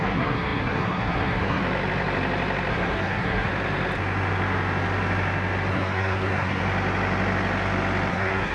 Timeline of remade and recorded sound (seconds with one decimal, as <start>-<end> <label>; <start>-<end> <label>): 0.0-1.6 remade; 1.6-2.7 recorded; 2.7-3.5 remade; 3.5-5.7 recorded; 5.7-6.6 remade; 6.6-8.1 recorded; 8.1-8.5 remade